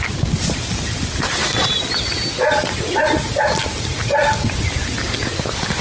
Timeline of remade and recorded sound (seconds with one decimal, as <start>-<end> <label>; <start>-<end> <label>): 0.0-5.8 recorded